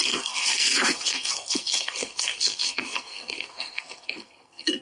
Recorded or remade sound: remade